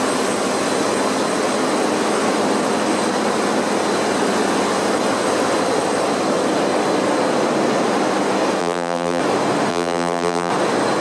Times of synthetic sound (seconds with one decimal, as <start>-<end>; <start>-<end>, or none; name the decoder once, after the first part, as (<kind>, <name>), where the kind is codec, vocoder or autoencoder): 8.6-9.2 (vocoder, BigVGAN v2); 9.7-10.5